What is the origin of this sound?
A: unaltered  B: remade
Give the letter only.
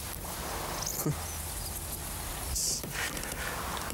A